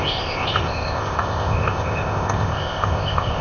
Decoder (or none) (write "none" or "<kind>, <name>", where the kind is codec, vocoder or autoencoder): codec, ZipCodec